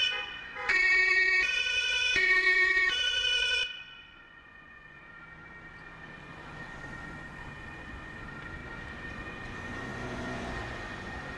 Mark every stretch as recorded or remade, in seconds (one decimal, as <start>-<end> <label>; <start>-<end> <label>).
0.0-5.0 remade; 5.0-6.2 recorded; 6.2-8.6 remade; 8.6-9.1 recorded; 9.1-11.4 remade